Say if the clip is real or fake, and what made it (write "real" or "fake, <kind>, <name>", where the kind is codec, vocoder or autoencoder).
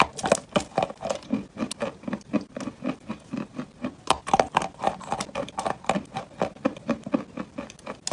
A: real